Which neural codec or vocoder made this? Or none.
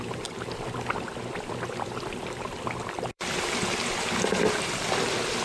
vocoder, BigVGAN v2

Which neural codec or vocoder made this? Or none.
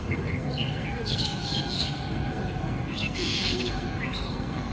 codec, SNAC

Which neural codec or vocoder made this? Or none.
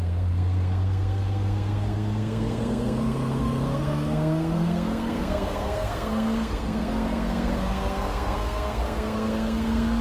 codec, SNAC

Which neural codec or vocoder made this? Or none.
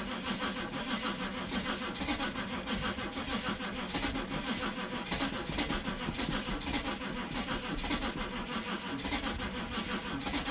none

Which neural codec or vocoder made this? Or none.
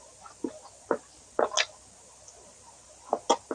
none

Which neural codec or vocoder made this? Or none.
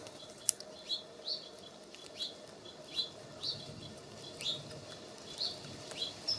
none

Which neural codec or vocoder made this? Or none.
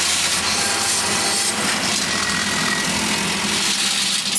none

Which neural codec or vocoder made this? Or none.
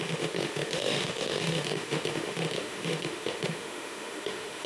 autoencoder, DAC-VAE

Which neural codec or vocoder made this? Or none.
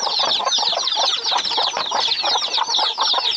none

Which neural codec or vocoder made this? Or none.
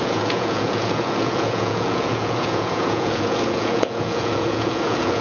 vocoder, Vocos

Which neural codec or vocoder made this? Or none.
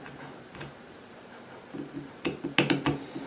none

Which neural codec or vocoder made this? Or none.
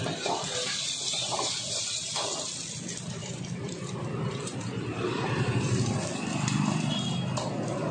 vocoder, BigVGAN v2